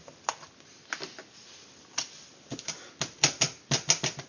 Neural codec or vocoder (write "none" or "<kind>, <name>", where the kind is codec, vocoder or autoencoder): none